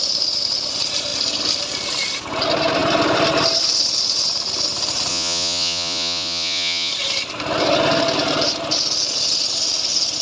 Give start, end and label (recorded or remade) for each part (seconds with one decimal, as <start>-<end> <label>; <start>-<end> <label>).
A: 0.0-5.1 recorded; 5.1-6.9 remade; 6.9-10.2 recorded